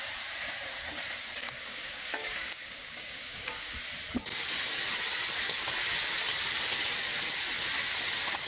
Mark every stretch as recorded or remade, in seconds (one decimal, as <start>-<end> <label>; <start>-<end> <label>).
0.0-1.4 recorded; 1.4-3.7 remade; 3.7-8.5 recorded